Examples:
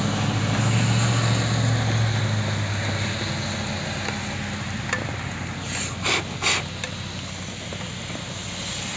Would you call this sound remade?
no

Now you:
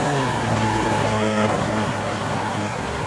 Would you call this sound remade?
yes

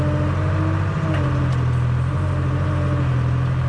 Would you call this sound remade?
no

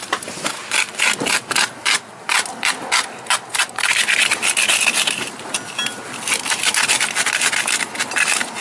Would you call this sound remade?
no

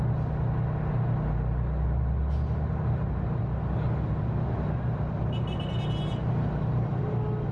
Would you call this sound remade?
no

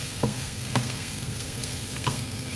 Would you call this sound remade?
yes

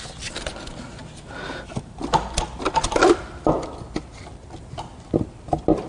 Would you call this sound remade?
no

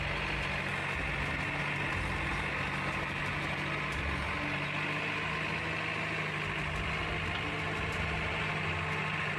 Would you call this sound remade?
no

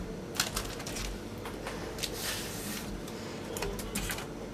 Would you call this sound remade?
no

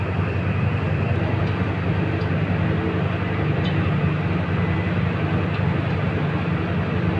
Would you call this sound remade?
no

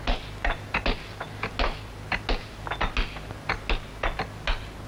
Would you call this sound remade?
no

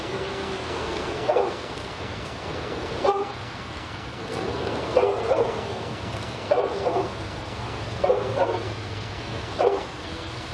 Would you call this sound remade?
yes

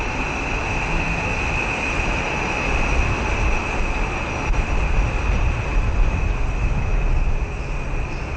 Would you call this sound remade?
no